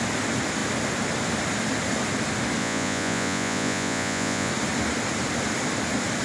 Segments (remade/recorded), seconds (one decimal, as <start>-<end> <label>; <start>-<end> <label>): 0.0-2.6 recorded; 2.6-4.5 remade; 4.5-6.2 recorded